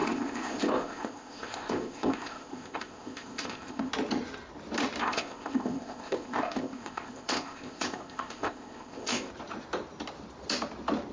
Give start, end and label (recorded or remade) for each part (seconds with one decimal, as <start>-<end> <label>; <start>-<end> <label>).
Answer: 0.0-3.9 remade; 3.9-5.0 recorded; 5.0-9.3 remade; 9.3-11.1 recorded